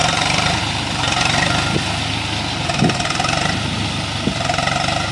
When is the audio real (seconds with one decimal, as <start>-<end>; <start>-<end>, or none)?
0.6-5.1